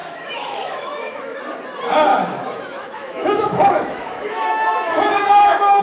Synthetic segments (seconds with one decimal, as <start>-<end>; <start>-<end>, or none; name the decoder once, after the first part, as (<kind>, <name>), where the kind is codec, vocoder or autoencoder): 0.0-1.4 (autoencoder, DAC-VAE); 2.1-5.8